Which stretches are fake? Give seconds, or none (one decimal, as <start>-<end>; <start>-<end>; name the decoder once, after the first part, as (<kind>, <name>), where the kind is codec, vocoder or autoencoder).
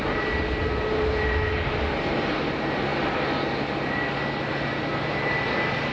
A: 2.1-2.9 (vocoder, BigVGAN v2); 4.3-5.9